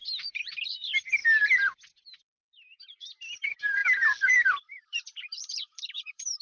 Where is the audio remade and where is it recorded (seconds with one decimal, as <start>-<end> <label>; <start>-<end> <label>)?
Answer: 0.0-1.2 remade; 1.2-2.2 recorded; 2.2-6.4 remade